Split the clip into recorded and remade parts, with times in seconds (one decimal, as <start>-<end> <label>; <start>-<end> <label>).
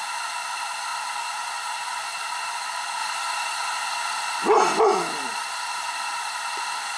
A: 0.0-7.0 recorded